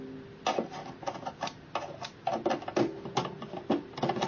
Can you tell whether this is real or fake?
real